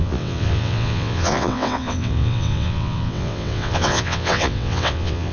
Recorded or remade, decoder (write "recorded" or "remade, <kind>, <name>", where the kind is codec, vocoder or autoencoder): remade, vocoder, WaveNeXt